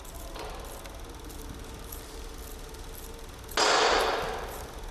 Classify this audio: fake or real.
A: real